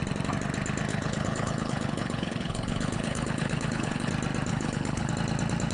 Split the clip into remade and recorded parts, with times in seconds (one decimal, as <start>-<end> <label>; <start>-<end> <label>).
0.0-0.9 recorded; 0.9-4.1 remade; 4.1-4.5 recorded; 4.5-5.1 remade; 5.1-5.7 recorded